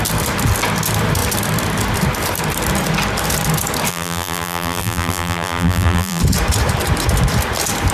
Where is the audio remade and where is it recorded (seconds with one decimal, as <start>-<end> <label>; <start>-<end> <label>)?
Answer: 0.0-3.9 recorded; 3.9-6.2 remade; 6.2-7.9 recorded